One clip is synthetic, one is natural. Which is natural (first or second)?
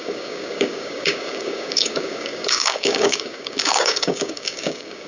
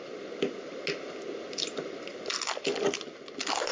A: second